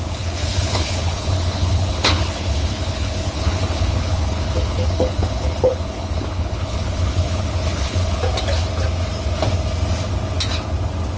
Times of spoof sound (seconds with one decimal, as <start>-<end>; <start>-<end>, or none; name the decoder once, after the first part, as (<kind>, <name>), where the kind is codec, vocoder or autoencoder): 0.0-8.2 (codec, HILCodec)